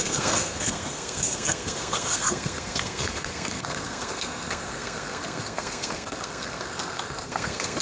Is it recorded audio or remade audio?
remade